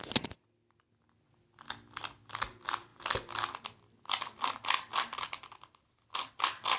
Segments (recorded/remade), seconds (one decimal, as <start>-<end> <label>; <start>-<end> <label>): 0.0-6.8 recorded